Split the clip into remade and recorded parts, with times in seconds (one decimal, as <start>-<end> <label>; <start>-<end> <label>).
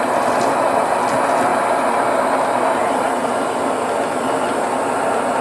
0.0-5.4 recorded